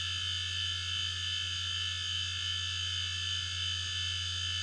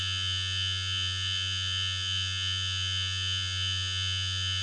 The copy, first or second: second